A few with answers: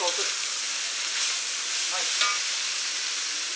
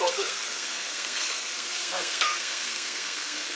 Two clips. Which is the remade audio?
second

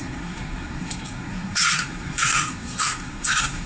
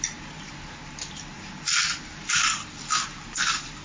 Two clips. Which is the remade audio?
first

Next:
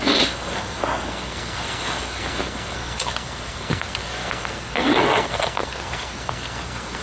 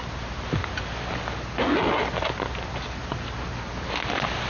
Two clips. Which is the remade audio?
first